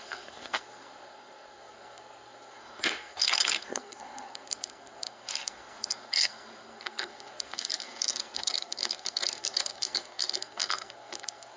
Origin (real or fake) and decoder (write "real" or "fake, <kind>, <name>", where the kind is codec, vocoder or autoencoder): fake, codec, SNAC